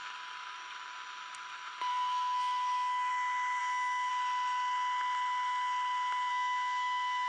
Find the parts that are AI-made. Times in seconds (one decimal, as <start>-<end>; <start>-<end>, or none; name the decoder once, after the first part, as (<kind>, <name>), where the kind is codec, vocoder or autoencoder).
1.9-3.1 (codec, SNAC); 3.6-4.1; 6.3-7.3